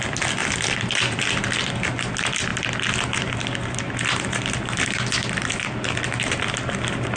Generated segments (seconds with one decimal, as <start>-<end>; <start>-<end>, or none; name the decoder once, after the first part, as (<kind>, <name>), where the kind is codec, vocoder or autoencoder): 0.4-2.1 (vocoder, BigVGAN v2)